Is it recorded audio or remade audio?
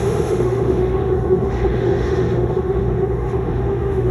remade